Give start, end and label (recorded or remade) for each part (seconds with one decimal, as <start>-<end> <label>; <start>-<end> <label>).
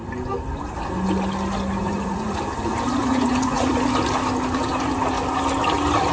0.0-1.8 recorded; 1.8-2.4 remade; 2.4-3.0 recorded; 3.0-3.7 remade; 3.7-6.1 recorded